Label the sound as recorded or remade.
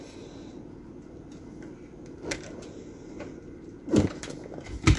remade